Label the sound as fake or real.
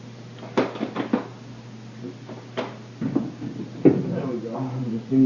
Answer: real